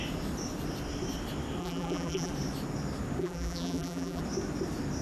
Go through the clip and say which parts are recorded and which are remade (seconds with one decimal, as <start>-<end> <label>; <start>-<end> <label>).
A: 0.0-1.6 recorded; 1.6-2.3 remade; 2.3-3.2 recorded; 3.2-4.2 remade; 4.2-5.0 recorded